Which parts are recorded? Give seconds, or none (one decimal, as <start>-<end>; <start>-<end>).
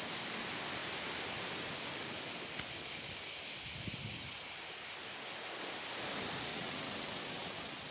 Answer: 0.0-6.5